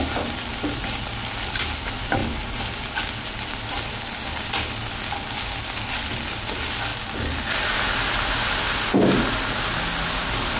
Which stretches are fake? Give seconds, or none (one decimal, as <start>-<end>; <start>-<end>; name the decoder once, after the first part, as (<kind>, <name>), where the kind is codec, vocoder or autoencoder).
none